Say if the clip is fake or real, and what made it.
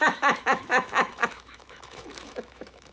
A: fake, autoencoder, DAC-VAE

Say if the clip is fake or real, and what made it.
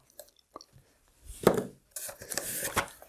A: real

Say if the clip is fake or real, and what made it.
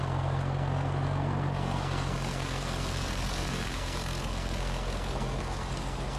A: fake, codec, SNAC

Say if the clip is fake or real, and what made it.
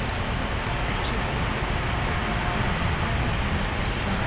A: real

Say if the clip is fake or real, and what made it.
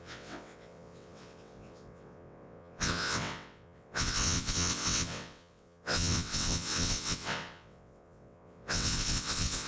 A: fake, vocoder, WaveNeXt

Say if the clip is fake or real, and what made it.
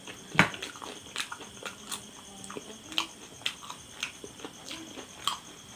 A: real